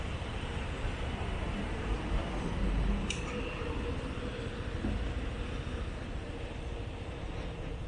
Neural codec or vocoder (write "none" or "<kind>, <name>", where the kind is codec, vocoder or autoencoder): none